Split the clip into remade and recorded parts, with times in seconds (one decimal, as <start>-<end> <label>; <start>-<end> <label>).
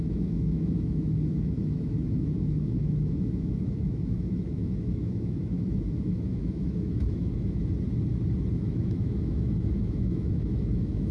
0.0-7.6 remade; 7.6-8.5 recorded; 8.5-11.1 remade